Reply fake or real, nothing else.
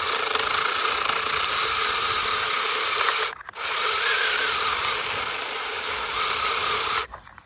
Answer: real